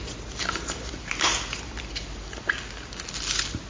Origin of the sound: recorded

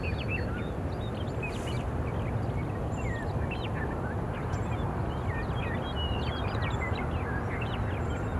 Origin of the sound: recorded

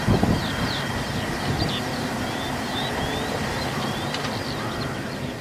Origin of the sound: recorded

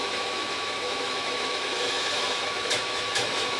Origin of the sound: remade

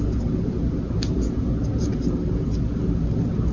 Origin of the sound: recorded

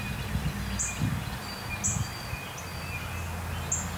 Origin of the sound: recorded